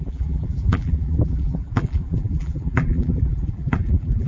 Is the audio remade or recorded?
remade